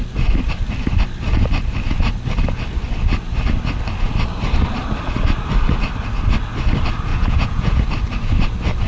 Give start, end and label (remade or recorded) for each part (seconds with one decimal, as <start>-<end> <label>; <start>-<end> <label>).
0.0-7.1 recorded; 7.1-7.8 remade; 7.8-8.9 recorded